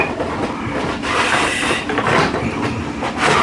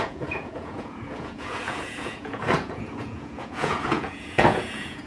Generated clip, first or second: second